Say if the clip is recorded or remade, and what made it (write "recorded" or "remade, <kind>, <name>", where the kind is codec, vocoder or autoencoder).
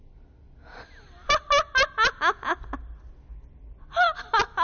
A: recorded